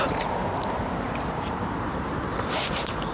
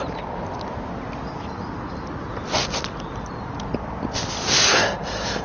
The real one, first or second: second